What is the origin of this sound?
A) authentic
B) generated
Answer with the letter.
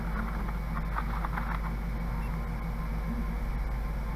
A